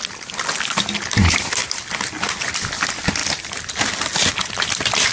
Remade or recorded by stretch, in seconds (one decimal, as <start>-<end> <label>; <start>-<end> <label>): 0.0-5.1 recorded